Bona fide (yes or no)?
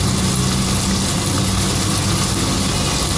yes